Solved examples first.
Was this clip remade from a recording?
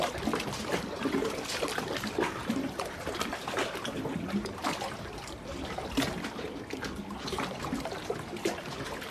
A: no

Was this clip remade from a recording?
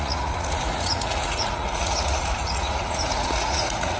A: yes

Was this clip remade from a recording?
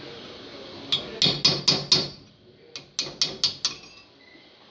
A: no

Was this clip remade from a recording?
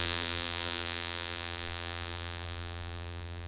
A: yes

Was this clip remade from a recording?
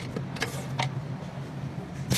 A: no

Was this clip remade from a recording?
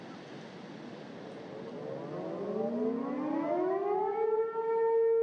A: no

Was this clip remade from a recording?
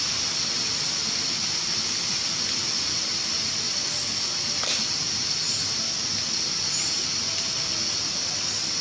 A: no